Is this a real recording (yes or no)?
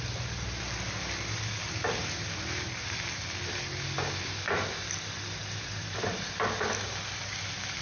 yes